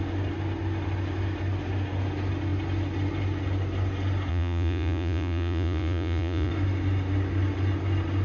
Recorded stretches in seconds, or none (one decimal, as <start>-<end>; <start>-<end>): 0.0-4.3; 6.5-8.2